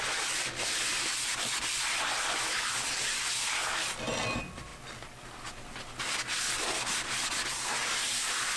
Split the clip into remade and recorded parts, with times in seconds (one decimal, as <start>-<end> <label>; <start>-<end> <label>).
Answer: 0.0-0.9 recorded; 0.9-2.8 remade; 2.8-8.6 recorded